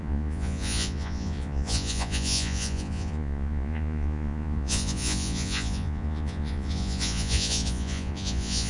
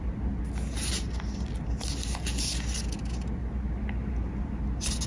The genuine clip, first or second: second